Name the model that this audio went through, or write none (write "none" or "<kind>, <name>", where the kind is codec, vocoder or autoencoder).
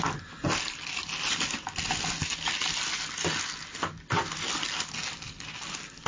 none